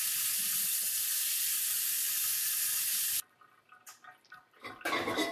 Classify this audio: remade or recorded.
recorded